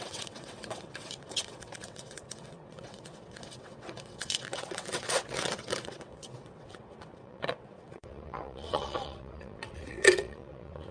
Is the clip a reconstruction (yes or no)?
yes